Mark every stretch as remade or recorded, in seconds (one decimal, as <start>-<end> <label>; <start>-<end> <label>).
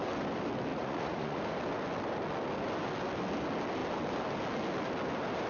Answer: 0.0-0.7 recorded; 0.7-1.4 remade; 1.4-5.5 recorded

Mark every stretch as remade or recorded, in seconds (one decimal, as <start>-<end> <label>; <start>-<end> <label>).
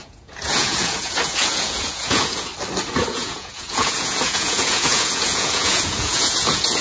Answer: 0.0-2.5 remade; 2.5-3.1 recorded; 3.1-6.8 remade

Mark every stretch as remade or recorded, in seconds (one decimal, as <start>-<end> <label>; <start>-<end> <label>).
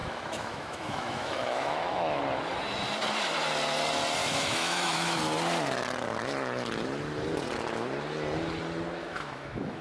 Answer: 0.0-2.2 remade; 2.2-4.2 recorded; 4.2-5.2 remade; 5.2-9.0 recorded; 9.0-9.8 remade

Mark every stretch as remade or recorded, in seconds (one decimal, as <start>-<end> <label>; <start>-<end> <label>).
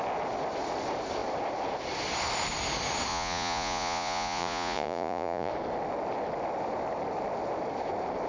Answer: 0.0-3.1 recorded; 3.1-5.5 remade; 5.5-8.3 recorded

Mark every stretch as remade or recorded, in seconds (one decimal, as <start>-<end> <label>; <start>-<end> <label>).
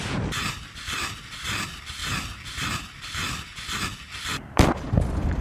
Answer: 0.0-2.0 recorded; 2.0-3.4 remade; 3.4-4.3 recorded; 4.3-5.4 remade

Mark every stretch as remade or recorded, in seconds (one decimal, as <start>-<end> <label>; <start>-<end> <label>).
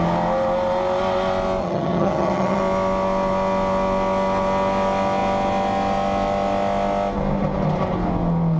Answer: 0.0-1.6 recorded; 1.6-2.6 remade; 2.6-8.6 recorded